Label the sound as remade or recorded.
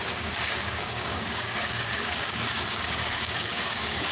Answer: remade